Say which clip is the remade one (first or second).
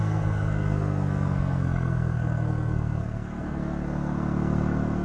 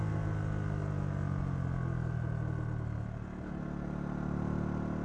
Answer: first